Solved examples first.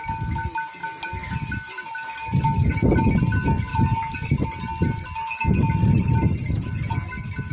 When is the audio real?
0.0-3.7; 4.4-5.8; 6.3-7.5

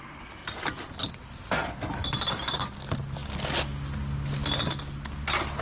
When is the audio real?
0.0-5.6

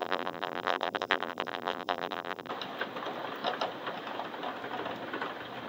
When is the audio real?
2.5-5.7

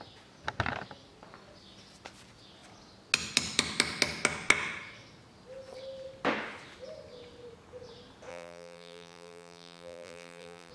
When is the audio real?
0.0-8.3